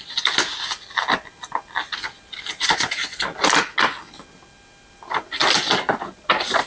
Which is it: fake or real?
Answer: real